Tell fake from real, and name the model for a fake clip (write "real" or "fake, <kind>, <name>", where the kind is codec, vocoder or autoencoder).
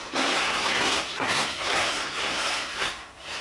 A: fake, codec, SNAC